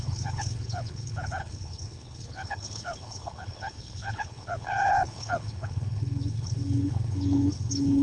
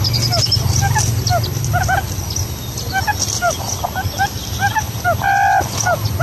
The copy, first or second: first